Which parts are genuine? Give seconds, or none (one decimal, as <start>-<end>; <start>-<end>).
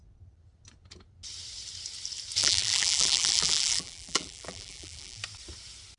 0.0-2.4; 5.2-6.0